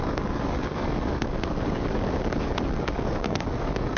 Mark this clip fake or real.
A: fake